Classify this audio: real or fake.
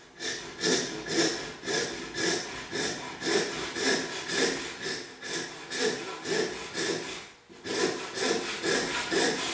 real